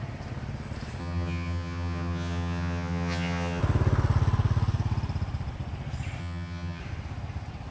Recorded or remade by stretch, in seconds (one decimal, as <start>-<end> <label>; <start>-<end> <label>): 0.0-1.0 recorded; 1.0-3.6 remade; 3.6-6.2 recorded; 6.2-6.8 remade; 6.8-7.7 recorded